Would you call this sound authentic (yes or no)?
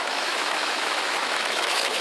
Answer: no